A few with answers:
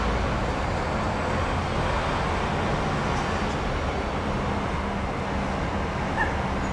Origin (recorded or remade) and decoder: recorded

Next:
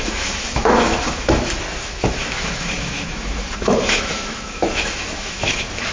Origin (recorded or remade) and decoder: remade, autoencoder, DAC-VAE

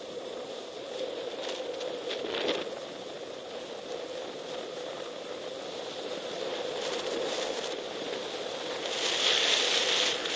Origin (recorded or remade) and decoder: recorded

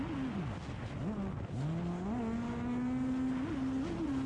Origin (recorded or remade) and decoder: recorded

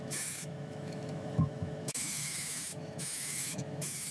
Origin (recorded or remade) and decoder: remade, autoencoder, DAC-VAE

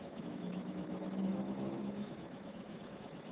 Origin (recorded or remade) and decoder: remade, autoencoder, DAC-VAE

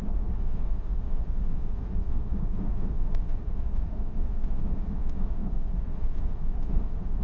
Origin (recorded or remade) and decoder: remade, autoencoder, DAC-VAE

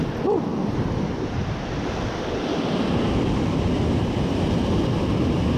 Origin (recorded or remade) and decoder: recorded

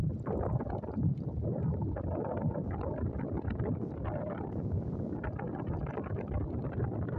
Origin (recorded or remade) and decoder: recorded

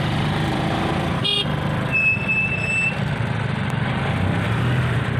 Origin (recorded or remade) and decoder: recorded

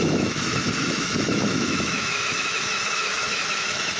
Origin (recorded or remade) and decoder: remade, autoencoder, DAC-VAE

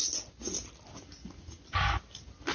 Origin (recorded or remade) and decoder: recorded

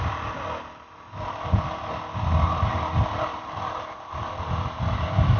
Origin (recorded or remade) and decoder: recorded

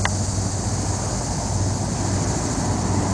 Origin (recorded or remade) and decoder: recorded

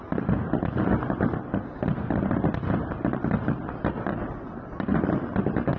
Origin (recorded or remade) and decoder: recorded